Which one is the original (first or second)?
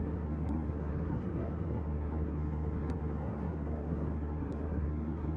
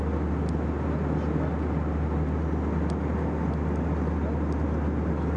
second